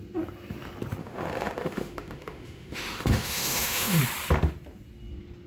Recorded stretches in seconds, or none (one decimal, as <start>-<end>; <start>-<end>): 0.0-1.0; 4.0-5.5